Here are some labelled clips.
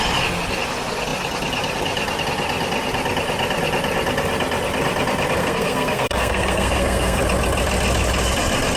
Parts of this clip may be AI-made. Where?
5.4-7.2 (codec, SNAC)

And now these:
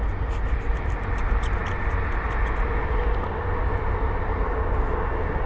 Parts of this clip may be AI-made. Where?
none